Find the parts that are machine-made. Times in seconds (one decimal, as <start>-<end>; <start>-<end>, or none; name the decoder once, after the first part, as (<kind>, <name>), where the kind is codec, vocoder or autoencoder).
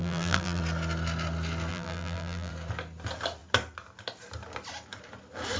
0.0-0.6 (vocoder, BigVGAN v2); 1.7-2.5